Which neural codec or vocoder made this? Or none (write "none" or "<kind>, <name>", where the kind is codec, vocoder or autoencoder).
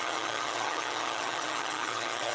vocoder, HiFi-GAN